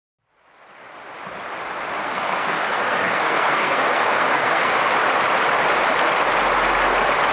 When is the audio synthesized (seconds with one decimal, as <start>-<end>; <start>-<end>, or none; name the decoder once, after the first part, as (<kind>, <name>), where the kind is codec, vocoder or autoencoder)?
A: 2.0-4.9 (codec, SNAC)